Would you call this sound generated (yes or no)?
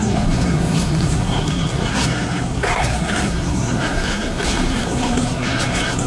yes